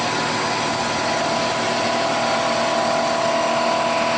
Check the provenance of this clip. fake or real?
real